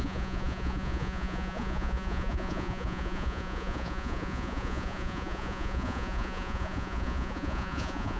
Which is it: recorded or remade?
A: remade